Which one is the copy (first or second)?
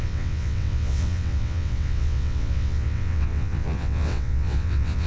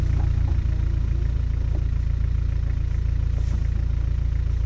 first